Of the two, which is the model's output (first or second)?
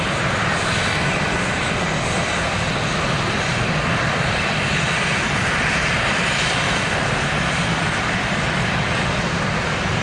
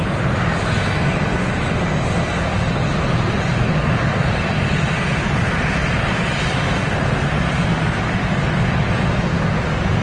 first